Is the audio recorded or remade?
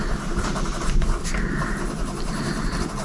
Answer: remade